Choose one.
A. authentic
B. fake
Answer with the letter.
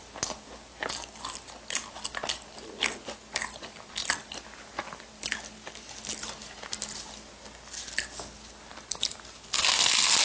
A